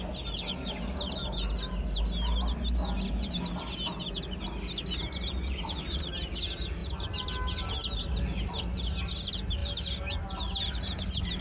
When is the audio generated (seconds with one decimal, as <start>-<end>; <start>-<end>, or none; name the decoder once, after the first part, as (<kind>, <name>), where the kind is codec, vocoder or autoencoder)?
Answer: none